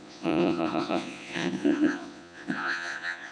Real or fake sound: fake